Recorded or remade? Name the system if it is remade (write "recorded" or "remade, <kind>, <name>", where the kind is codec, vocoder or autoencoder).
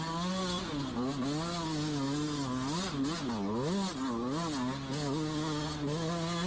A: recorded